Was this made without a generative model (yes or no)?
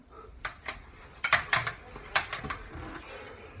yes